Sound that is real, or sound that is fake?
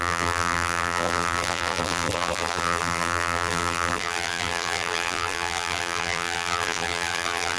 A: fake